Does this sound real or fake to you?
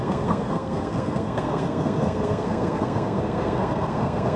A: fake